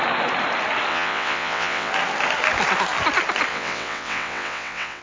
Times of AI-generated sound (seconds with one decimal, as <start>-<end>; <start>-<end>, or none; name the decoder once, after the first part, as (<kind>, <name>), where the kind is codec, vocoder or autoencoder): 0.9-1.9 (vocoder, WaveNeXt); 3.5-5.0